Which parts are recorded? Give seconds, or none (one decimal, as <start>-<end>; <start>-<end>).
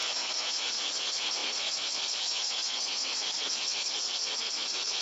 none